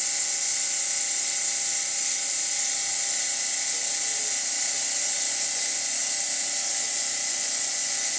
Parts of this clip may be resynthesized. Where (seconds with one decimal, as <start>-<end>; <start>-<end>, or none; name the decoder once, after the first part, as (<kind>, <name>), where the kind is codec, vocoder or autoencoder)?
0.0-0.5 (vocoder, Vocos); 5.3-6.0; 6.9-8.2